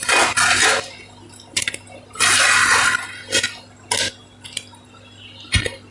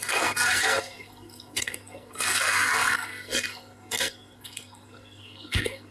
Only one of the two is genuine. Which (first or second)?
first